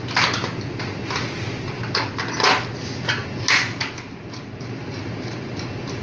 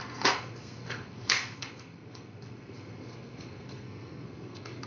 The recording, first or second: first